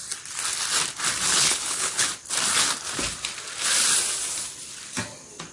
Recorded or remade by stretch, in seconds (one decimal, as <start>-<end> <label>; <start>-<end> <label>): 0.0-1.3 recorded; 1.3-2.1 remade; 2.1-5.5 recorded